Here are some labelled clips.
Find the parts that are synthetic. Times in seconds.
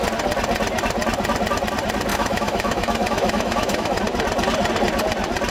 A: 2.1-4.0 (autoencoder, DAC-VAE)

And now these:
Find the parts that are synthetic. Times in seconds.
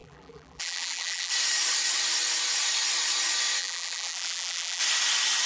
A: 0.0-1.3 (vocoder, BigVGAN v2); 3.6-4.8